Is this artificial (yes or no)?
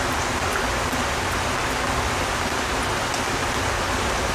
no